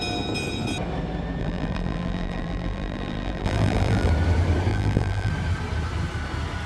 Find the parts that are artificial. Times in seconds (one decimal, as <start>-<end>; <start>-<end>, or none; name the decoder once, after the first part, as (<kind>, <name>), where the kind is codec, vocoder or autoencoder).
1.4-4.1 (vocoder, BigVGAN v2); 4.7-5.3